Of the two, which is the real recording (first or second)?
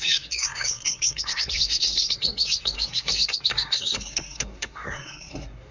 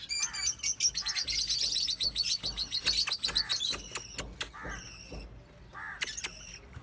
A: second